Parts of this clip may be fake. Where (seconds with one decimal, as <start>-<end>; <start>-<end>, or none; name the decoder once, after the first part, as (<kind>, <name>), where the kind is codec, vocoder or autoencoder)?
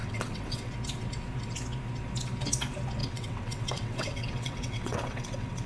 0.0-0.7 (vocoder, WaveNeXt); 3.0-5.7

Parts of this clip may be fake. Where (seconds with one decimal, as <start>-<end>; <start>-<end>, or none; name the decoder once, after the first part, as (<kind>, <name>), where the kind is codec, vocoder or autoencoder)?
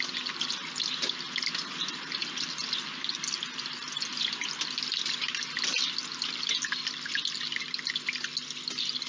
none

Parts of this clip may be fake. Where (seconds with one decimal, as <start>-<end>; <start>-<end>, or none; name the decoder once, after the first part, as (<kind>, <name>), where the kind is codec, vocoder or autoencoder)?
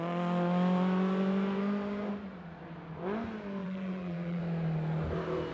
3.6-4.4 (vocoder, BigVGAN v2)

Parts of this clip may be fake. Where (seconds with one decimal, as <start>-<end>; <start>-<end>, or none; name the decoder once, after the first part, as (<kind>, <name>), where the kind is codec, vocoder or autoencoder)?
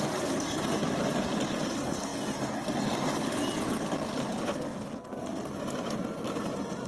0.0-2.1 (vocoder, BigVGAN v2); 5.7-6.9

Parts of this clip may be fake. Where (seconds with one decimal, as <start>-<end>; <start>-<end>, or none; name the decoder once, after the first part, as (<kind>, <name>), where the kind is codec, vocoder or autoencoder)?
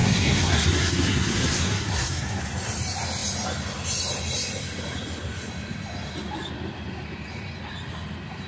0.0-2.4 (codec, SNAC)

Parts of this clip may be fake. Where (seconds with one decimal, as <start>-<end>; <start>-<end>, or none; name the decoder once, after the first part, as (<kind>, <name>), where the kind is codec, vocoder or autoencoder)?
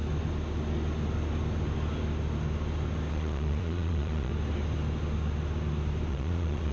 3.1-4.3 (vocoder, Vocos); 6.1-6.7